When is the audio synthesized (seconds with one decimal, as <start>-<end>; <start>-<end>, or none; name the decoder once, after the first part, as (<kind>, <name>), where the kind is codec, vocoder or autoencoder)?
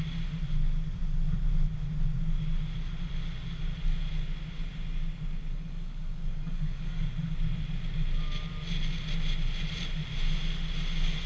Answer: 5.5-7.0 (codec, DAC)